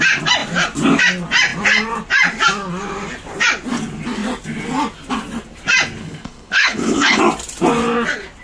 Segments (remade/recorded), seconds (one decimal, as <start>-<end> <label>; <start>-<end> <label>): 0.0-6.0 recorded; 6.0-7.2 remade; 7.2-8.4 recorded